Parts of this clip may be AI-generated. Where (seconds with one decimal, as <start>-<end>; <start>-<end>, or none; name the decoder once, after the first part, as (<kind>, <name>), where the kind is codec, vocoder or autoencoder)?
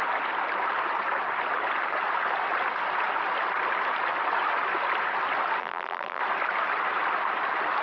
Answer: 5.6-6.2 (vocoder, BigVGAN v2)